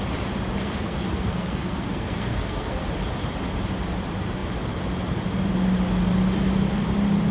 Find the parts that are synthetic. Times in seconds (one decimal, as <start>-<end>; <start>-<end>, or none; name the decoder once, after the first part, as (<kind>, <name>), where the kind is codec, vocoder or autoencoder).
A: 0.6-2.8 (codec, SNAC)

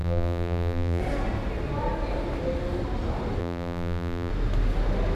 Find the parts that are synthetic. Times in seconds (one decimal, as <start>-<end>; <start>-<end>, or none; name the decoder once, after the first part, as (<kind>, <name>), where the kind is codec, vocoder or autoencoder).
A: 0.0-1.0 (vocoder, BigVGAN v2); 3.4-4.3

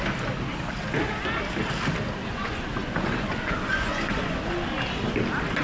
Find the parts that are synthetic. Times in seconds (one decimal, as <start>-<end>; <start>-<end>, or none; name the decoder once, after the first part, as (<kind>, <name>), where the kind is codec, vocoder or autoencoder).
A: 2.2-4.4 (vocoder, Vocos)

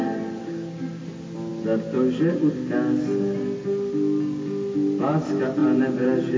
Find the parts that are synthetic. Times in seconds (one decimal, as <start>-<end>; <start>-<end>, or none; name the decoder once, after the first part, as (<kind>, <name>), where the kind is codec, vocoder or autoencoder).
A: 0.4-1.0 (codec, DAC)

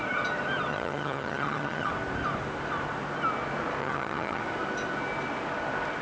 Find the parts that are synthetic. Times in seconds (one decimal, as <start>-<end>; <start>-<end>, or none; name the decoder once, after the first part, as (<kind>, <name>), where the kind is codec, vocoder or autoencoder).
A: 0.7-1.9 (vocoder, HiFi-GAN); 3.8-4.4

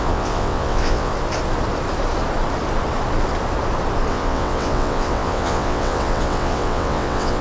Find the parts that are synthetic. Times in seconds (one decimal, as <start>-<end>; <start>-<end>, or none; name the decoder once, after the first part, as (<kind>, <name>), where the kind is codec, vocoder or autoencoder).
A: 0.0-1.1 (vocoder, WaveNeXt); 4.1-7.4